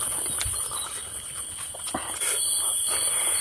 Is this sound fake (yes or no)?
no